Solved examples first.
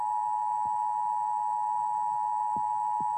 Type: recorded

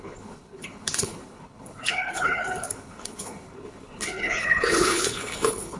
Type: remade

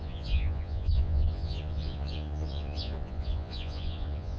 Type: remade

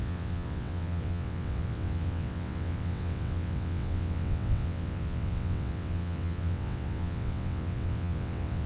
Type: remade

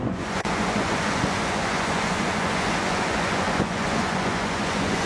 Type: remade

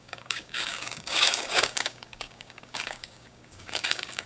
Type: remade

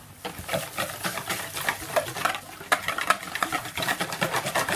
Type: remade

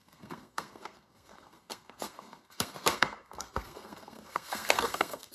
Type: remade